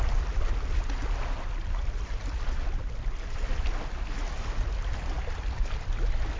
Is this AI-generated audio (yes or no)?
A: no